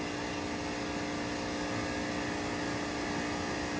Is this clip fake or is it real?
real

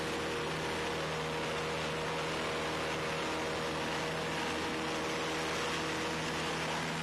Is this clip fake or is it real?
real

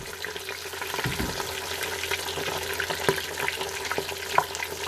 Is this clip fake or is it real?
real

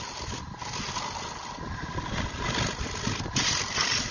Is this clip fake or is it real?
real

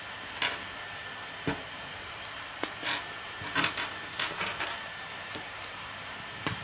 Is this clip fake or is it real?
fake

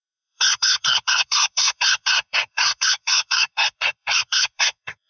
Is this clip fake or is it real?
fake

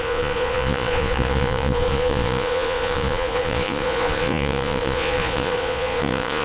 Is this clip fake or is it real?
fake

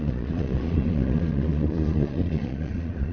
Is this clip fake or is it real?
fake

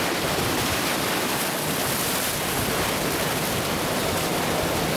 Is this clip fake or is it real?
real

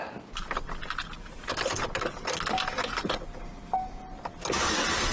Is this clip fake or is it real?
real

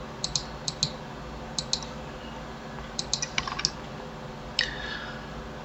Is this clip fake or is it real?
real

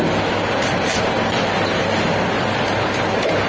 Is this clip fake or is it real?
real